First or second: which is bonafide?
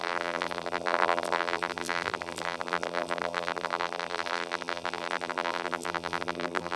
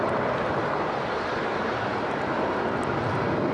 second